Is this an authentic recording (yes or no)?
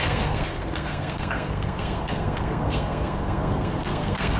no